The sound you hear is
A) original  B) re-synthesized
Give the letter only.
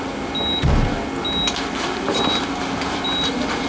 A